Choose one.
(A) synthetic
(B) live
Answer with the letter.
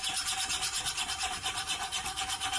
A